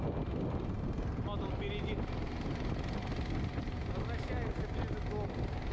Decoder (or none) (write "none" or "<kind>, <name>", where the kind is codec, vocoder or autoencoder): none